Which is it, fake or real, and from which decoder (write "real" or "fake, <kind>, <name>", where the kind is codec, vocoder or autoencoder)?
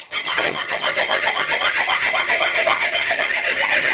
fake, vocoder, HiFi-GAN